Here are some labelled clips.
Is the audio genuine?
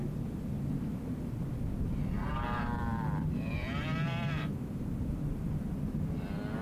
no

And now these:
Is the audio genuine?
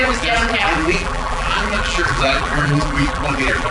no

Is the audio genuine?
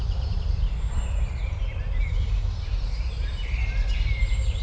no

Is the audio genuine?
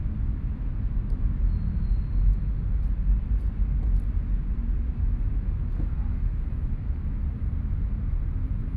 yes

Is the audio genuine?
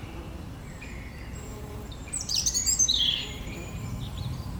no